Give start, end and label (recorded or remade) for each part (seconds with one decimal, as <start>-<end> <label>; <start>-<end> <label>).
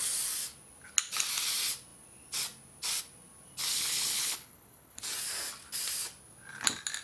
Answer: 0.0-3.7 recorded; 3.7-5.0 remade; 5.0-7.0 recorded